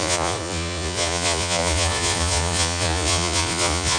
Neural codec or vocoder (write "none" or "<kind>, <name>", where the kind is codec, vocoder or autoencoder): vocoder, Vocos